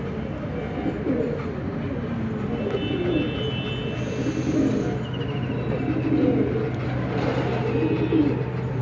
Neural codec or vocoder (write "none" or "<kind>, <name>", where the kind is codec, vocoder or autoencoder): none